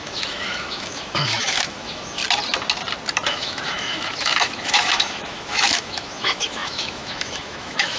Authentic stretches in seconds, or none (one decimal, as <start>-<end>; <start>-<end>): 2.2-3.3